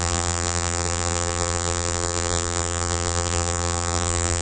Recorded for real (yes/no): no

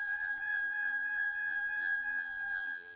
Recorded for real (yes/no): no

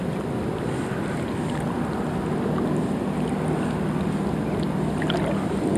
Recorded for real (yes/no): yes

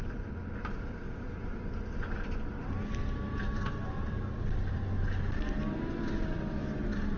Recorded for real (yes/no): no